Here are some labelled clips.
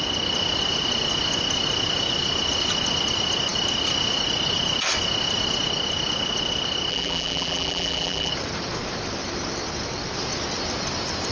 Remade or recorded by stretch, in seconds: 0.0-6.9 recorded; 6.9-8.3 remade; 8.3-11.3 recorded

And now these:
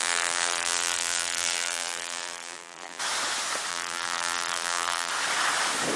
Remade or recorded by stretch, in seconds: 0.0-3.0 remade; 3.0-3.7 recorded; 3.7-5.1 remade; 5.1-6.0 recorded

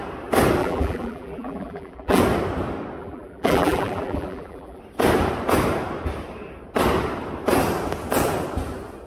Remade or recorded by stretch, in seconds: 0.0-0.6 recorded; 0.6-2.2 remade; 2.2-3.0 recorded; 3.0-4.8 remade; 4.8-9.1 recorded

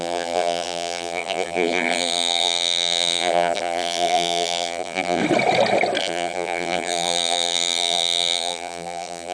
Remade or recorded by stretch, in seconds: 0.0-5.2 remade; 5.2-6.0 recorded; 6.0-9.3 remade